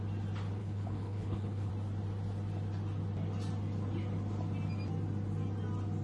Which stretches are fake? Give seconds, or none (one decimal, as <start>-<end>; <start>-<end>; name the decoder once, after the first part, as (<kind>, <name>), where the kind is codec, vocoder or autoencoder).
0.6-1.7 (codec, HILCodec)

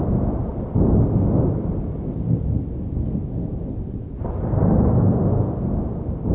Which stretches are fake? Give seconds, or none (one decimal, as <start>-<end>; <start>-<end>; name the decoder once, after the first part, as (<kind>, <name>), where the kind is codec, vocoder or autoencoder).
none

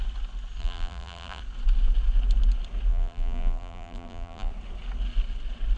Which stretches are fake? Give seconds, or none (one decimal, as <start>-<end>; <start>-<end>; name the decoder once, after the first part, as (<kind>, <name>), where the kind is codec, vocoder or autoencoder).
0.6-1.4 (vocoder, BigVGAN v2); 2.9-4.5

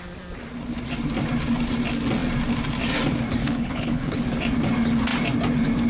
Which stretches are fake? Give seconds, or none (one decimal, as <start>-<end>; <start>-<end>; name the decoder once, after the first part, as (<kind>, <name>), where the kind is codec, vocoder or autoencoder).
3.4-4.2 (codec, HILCodec)

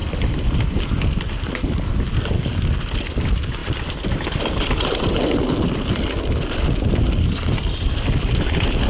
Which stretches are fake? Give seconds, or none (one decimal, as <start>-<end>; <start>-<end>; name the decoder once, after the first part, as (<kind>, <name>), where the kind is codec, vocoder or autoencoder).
0.0-1.8 (vocoder, BigVGAN v2); 3.6-5.0